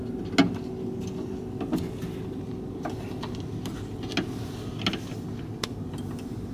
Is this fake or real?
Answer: real